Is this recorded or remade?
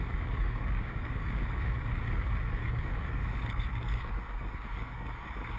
remade